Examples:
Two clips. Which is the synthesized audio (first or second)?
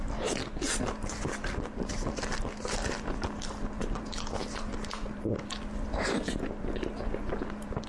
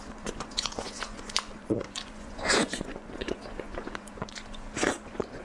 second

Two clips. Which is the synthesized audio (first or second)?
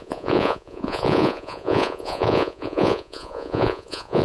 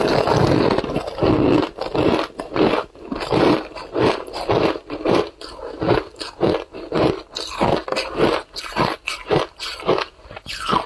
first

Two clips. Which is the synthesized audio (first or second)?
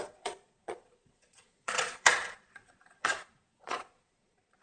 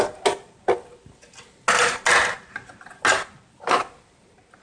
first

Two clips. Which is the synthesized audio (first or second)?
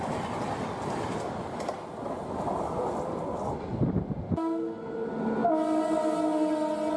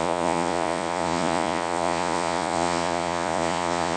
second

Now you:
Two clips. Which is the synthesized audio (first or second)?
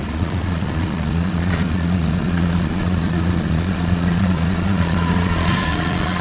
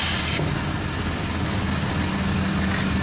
first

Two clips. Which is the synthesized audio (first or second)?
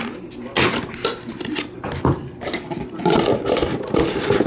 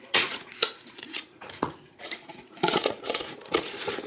second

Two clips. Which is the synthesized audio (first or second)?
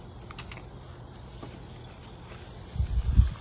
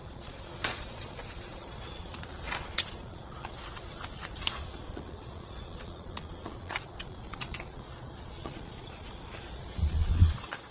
second